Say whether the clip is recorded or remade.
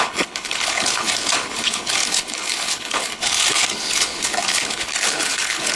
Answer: remade